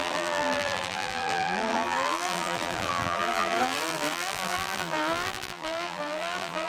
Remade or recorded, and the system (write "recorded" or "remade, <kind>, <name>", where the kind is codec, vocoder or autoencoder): remade, vocoder, BigVGAN v2